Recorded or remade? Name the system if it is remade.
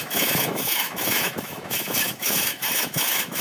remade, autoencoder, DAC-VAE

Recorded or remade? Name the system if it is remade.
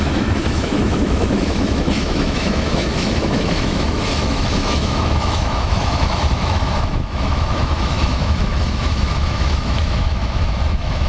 remade, autoencoder, DAC-VAE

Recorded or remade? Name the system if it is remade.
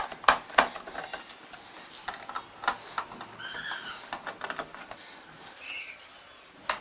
recorded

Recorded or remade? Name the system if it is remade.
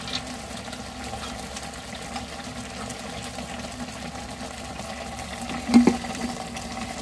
recorded